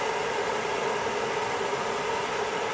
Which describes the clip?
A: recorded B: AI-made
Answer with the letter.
A